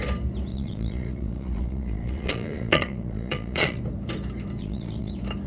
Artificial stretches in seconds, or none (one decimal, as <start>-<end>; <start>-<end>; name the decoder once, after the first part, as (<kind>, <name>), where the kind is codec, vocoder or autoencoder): 0.5-3.8 (vocoder, Vocos); 4.6-5.1